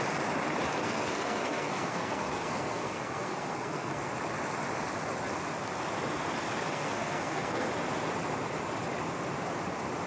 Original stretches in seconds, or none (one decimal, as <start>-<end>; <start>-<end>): 0.0-0.8; 4.1-6.7; 7.7-10.1